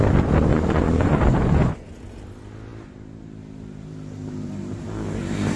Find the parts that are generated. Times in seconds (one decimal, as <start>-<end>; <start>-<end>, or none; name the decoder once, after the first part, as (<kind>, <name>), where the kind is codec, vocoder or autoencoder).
0.5-2.0 (vocoder, Vocos)